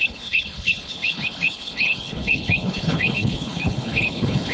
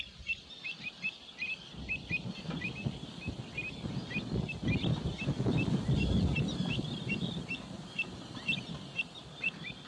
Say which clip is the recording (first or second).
second